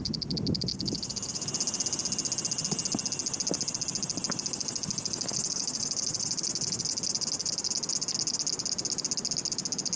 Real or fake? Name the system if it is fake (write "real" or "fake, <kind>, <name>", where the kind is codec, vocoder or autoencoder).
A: real